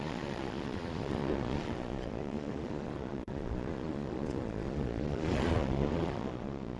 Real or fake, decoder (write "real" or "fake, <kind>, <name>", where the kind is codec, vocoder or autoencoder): fake, vocoder, Vocos